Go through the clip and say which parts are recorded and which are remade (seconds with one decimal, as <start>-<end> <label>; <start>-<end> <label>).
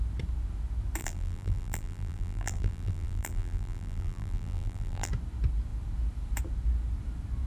0.0-1.0 recorded; 1.0-5.1 remade; 5.1-7.5 recorded